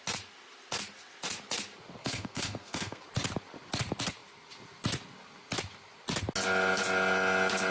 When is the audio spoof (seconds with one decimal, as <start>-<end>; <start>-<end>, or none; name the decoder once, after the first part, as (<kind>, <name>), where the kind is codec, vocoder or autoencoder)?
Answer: 2.0-3.0 (codec, SNAC)